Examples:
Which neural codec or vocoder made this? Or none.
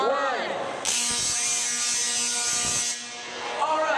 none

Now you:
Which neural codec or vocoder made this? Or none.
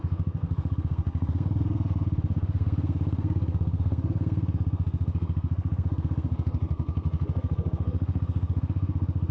codec, SNAC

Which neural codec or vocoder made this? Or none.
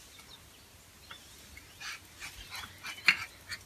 none